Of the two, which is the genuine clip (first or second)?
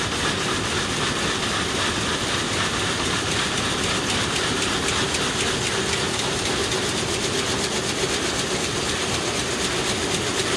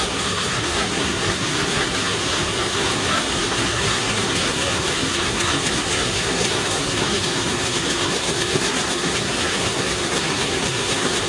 first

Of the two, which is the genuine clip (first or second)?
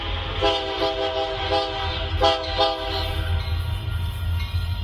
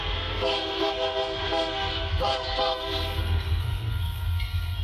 first